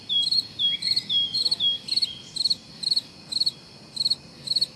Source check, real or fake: real